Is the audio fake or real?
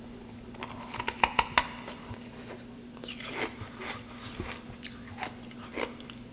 real